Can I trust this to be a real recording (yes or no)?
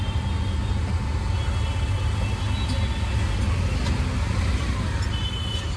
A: yes